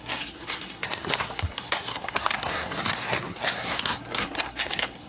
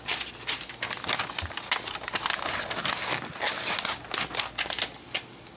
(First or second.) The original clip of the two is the second